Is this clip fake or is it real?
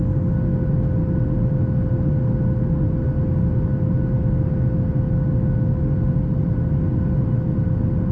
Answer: real